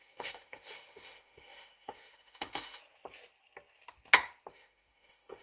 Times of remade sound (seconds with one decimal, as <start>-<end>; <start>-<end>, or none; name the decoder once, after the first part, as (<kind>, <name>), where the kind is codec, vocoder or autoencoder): 0.0-2.8 (autoencoder, DAC-VAE); 4.5-5.4